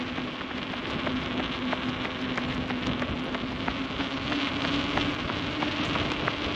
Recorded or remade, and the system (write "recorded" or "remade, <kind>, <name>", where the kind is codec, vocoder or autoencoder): recorded